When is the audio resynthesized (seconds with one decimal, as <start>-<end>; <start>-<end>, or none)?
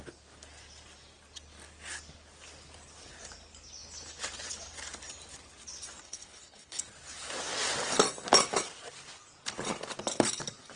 6.0-6.8